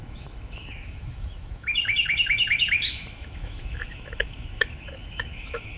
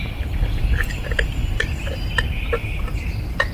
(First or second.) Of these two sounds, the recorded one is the second